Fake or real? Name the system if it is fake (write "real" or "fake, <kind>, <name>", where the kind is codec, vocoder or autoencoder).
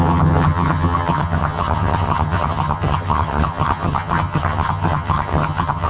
fake, vocoder, HiFi-GAN